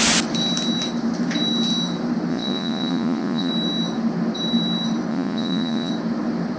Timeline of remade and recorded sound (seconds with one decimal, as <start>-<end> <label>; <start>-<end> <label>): 0.0-2.3 recorded; 2.3-3.5 remade; 3.5-5.1 recorded; 5.1-5.9 remade; 5.9-6.6 recorded

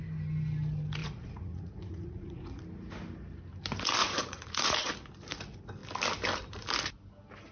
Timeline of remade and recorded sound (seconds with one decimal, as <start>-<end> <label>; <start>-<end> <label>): 0.0-1.0 recorded; 1.0-2.6 remade; 2.6-4.0 recorded; 4.0-4.9 remade; 4.9-7.5 recorded

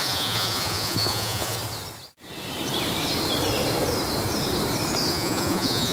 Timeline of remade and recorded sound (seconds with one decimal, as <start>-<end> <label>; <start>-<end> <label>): 0.0-1.6 remade; 1.6-5.1 recorded; 5.1-5.9 remade

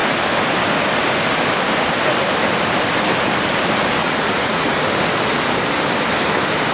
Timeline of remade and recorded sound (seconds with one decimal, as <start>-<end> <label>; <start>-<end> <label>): 0.0-4.0 recorded; 4.0-4.8 remade; 4.8-6.7 recorded